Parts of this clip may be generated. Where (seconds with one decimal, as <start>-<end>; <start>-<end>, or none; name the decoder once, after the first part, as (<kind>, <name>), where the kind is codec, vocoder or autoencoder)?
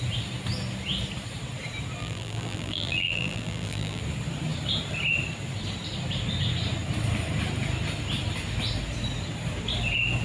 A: 2.0-4.0 (vocoder, BigVGAN v2)